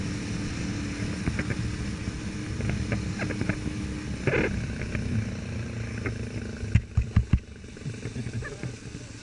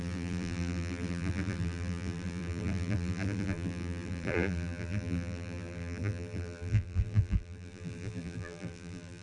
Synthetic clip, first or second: second